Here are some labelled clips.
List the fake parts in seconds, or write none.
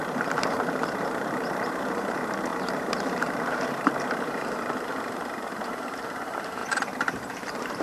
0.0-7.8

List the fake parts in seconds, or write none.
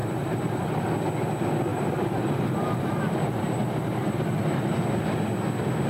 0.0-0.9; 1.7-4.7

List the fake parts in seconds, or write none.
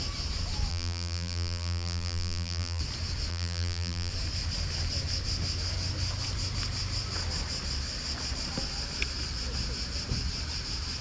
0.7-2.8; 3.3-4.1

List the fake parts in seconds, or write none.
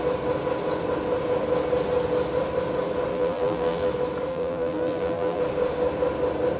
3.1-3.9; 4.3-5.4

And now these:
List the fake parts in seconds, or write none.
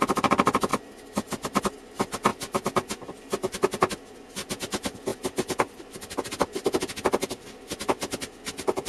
0.7-1.6; 5.1-6.1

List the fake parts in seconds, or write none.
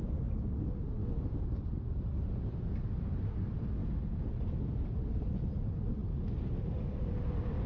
0.0-3.8; 4.4-6.0; 6.9-7.7